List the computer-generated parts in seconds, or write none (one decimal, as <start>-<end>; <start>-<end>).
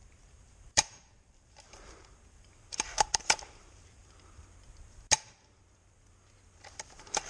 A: 0.0-4.4